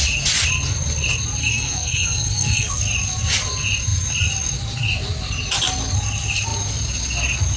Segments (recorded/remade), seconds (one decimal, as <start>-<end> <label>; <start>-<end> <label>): 0.0-1.4 recorded; 1.4-2.8 remade; 2.8-7.6 recorded